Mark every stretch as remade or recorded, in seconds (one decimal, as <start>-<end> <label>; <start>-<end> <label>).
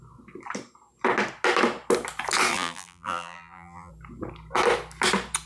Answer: 0.0-2.5 recorded; 2.5-3.9 remade; 3.9-5.5 recorded